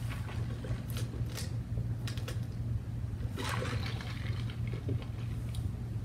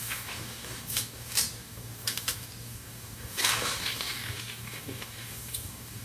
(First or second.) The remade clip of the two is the second